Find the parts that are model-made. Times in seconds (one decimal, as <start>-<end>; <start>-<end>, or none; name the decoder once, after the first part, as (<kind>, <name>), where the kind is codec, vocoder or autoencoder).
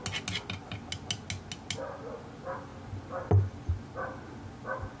none